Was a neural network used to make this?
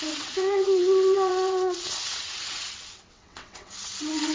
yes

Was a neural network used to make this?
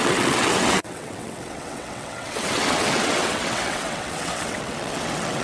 yes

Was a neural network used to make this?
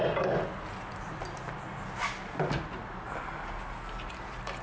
no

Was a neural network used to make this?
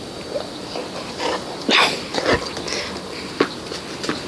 no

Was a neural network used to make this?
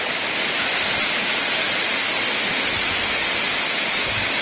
no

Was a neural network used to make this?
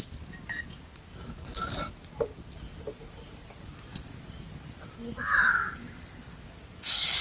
no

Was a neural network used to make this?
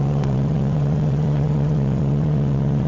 yes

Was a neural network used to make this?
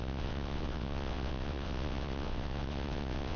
yes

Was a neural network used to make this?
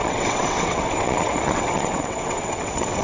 yes